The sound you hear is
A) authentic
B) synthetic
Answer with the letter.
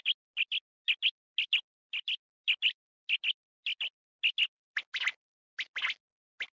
A